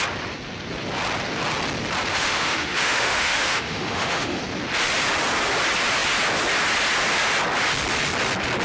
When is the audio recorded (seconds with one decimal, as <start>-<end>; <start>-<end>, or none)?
0.0-2.1; 4.4-8.6